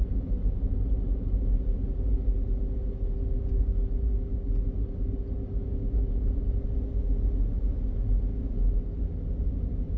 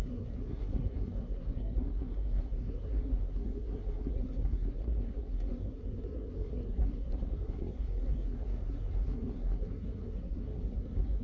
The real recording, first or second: first